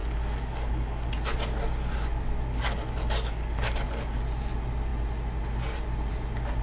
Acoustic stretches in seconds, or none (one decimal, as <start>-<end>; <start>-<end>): 1.1-2.5; 4.2-6.6